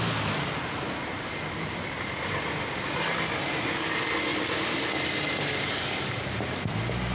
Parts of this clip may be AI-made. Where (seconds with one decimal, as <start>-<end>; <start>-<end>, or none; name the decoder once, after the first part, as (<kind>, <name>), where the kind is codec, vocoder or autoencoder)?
none